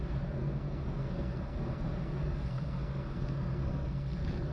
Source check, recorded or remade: remade